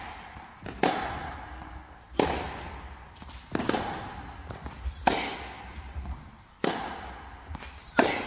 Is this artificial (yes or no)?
no